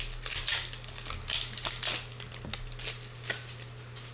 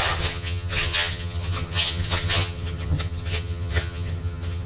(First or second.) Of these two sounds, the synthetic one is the second